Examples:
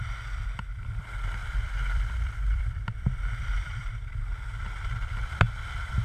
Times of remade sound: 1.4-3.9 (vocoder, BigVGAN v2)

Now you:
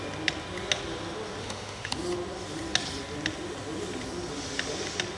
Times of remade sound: 1.4-1.9 (autoencoder, DAC-VAE)

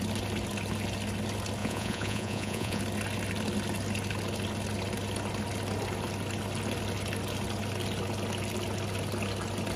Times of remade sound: 1.6-2.8 (vocoder, Vocos)